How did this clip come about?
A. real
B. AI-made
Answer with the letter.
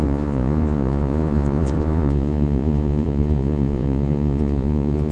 B